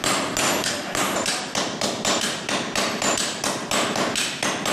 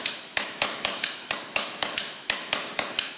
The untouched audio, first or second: first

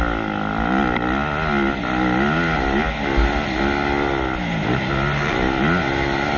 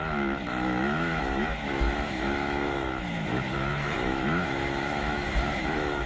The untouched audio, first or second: first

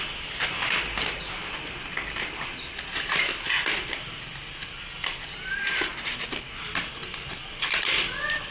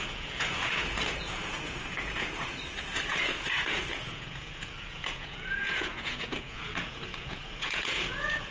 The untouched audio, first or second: first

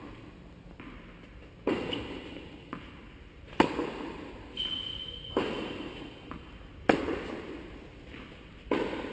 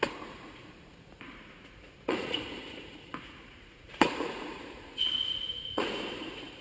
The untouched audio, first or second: first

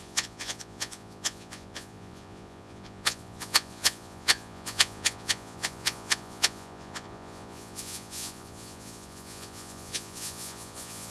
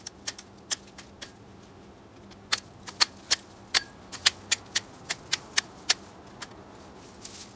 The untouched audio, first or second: second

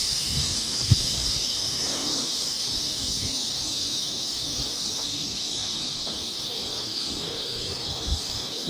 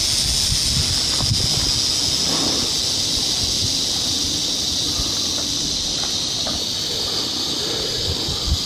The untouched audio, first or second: second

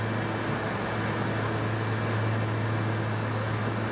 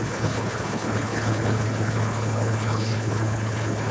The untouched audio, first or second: first